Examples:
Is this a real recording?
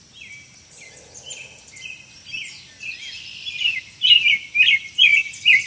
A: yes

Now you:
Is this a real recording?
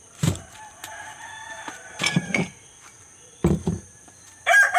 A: no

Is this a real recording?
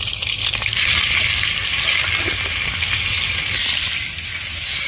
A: yes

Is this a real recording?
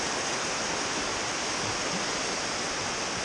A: yes